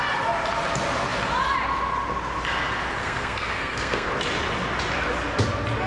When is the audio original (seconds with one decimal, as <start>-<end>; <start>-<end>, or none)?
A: 0.0-3.0; 4.1-5.9